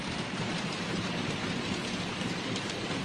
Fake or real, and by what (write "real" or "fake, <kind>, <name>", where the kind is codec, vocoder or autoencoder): fake, vocoder, BigVGAN v2